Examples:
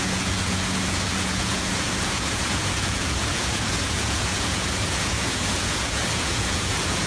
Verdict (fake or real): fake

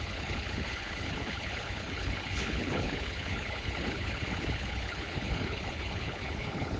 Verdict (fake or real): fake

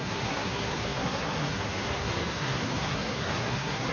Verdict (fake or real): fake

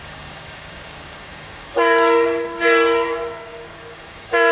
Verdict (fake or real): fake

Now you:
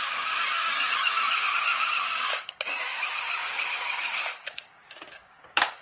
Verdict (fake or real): fake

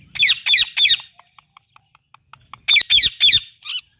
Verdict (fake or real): real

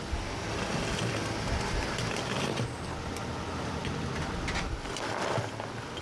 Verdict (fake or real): real